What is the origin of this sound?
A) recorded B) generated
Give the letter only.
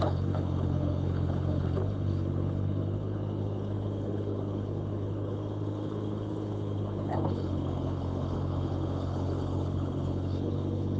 B